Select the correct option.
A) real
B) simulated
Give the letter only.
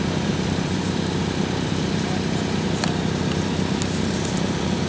B